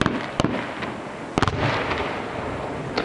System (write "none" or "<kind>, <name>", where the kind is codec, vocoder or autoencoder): none